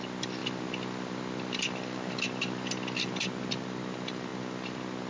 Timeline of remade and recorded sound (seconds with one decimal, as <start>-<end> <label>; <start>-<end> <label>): 0.0-5.1 recorded